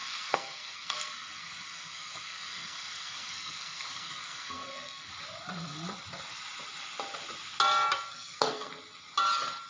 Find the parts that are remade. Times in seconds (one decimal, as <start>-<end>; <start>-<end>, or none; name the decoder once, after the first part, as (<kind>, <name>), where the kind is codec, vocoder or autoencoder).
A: 0.0-5.1 (codec, SNAC); 8.1-8.7